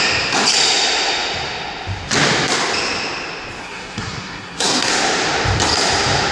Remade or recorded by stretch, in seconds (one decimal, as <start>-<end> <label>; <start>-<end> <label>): 0.0-3.6 recorded; 3.6-4.9 remade; 4.9-6.3 recorded